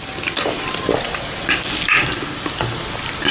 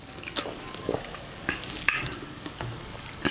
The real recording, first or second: first